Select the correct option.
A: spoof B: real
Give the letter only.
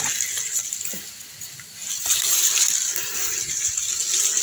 B